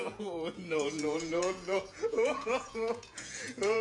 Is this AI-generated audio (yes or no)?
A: yes